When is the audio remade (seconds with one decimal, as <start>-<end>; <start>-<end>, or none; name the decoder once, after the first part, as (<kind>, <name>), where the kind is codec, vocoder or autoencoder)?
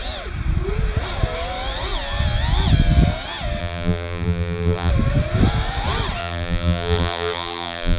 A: 3.6-4.9 (vocoder, BigVGAN v2); 6.2-8.0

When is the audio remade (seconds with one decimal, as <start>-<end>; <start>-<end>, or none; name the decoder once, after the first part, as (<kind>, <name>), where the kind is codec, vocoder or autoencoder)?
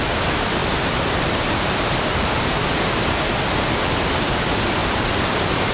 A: 0.6-3.2 (vocoder, BigVGAN v2); 4.8-5.3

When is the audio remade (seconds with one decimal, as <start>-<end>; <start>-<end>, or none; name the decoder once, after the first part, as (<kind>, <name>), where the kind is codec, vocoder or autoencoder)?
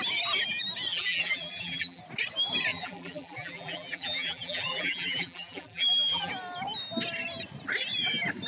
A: 0.9-2.0 (vocoder, BigVGAN v2); 2.7-6.3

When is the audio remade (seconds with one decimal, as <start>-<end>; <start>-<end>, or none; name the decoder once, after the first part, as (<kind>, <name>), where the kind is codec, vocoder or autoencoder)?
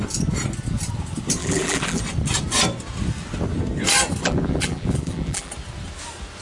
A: 1.4-2.0 (vocoder, BigVGAN v2); 4.2-5.5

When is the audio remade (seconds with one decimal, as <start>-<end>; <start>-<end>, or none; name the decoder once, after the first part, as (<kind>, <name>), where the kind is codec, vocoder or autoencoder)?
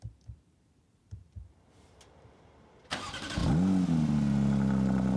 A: 0.0-3.4 (vocoder, BigVGAN v2)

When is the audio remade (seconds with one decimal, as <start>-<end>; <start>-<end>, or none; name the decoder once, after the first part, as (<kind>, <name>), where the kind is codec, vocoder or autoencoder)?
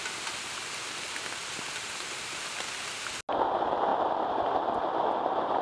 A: 1.4-2.6 (vocoder, BigVGAN v2); 3.9-4.5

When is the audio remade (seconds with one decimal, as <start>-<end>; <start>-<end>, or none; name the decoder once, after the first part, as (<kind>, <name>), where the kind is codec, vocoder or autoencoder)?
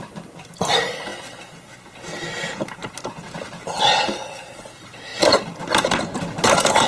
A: none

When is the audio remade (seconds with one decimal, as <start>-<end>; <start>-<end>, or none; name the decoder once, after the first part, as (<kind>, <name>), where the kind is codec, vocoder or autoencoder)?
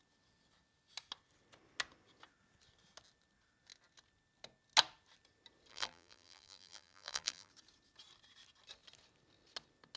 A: 5.7-7.5 (vocoder, BigVGAN v2)